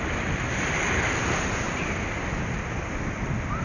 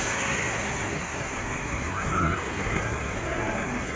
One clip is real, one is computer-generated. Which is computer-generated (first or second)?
second